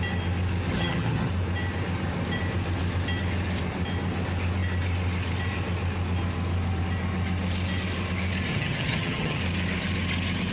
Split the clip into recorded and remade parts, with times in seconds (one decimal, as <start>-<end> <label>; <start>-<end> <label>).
0.0-0.7 recorded; 0.7-1.3 remade; 1.3-8.5 recorded; 8.5-9.4 remade; 9.4-10.5 recorded